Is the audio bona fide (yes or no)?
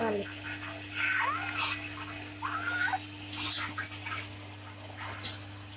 yes